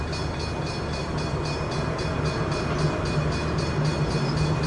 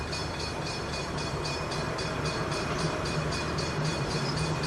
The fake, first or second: second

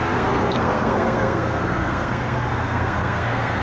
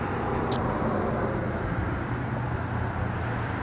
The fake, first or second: first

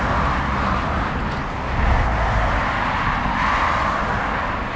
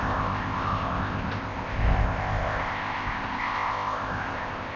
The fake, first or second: second